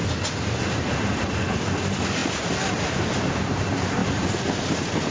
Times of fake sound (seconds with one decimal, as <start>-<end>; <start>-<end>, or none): none